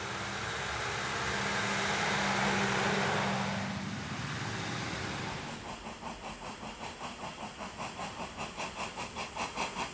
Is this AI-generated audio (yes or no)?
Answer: no